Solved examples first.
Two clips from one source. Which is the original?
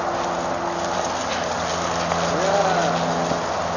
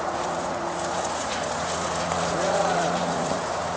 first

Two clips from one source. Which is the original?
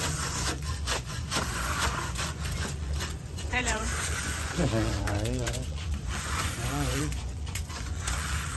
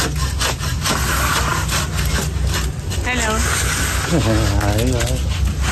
second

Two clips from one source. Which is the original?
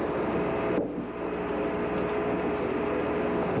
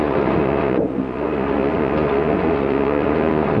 first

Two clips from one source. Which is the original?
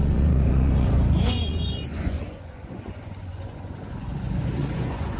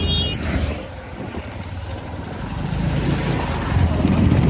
second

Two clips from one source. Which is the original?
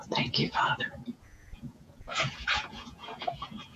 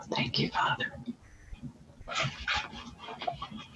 second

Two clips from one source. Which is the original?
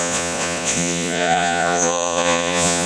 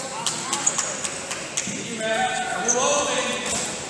second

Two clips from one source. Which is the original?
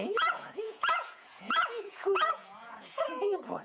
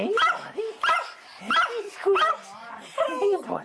second